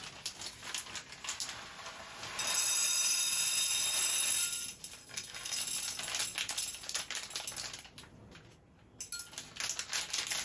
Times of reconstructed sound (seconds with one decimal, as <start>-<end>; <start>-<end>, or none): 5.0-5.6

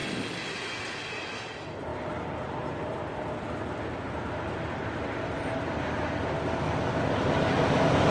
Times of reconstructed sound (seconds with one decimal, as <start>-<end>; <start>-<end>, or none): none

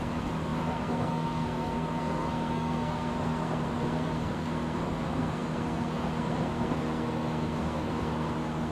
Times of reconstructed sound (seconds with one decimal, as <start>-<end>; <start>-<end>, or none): 0.0-8.7